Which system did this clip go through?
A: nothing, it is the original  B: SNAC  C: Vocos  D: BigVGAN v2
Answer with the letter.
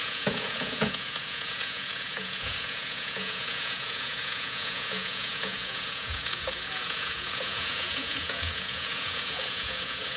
C